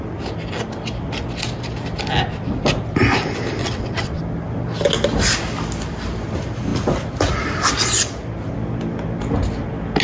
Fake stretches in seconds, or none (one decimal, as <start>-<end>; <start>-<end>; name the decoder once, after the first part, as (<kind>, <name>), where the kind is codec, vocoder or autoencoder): 3.6-4.2 (vocoder, WaveNeXt)